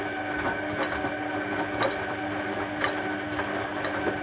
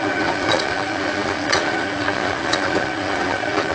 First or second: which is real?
first